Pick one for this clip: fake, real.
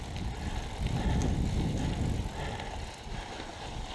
real